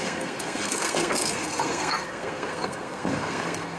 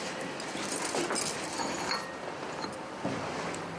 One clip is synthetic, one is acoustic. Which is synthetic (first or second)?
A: first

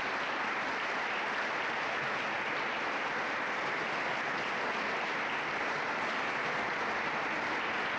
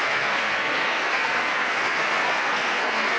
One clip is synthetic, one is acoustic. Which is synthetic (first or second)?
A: second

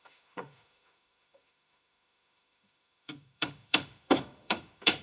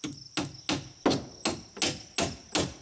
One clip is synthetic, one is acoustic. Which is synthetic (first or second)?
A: first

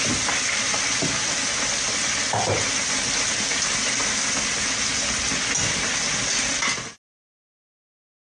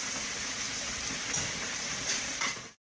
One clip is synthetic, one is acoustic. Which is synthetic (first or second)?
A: second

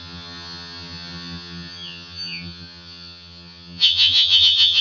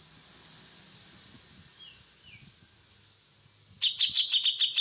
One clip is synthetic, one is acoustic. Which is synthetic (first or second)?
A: first